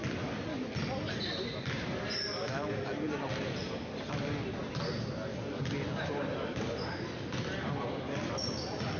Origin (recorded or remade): recorded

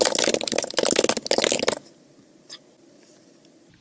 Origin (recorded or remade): recorded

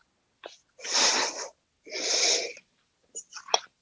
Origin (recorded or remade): recorded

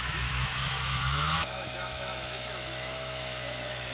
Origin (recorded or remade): remade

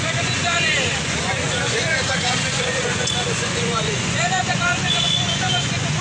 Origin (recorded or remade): remade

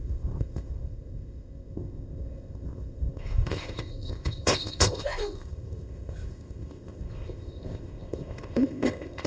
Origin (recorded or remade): remade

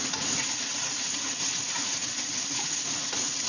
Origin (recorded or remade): remade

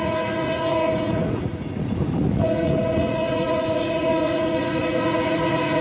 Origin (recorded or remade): remade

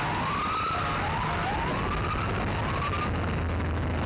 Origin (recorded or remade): recorded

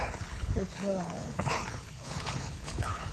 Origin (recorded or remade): remade